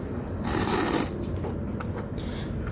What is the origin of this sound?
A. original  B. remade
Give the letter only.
B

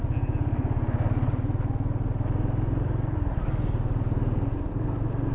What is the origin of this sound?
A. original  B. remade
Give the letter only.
A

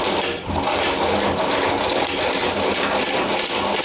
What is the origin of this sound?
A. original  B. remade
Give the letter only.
A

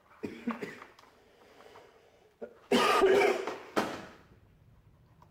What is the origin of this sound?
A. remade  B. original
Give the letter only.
A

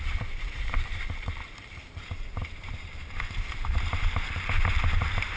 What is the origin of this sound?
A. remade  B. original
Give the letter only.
A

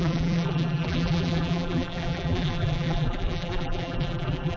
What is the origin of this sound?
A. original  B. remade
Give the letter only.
B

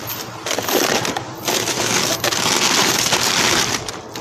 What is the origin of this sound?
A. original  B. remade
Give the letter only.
A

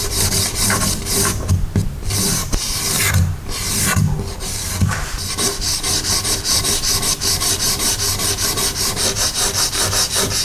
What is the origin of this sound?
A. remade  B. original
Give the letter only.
A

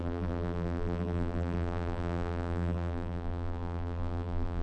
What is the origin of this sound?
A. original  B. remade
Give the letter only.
B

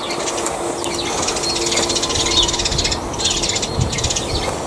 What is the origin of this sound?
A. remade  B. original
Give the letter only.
B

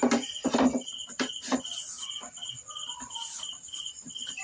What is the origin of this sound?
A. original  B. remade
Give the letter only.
B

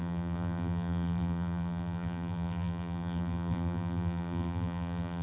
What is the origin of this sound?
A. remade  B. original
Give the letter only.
A